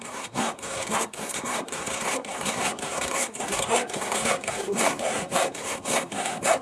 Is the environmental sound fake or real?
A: fake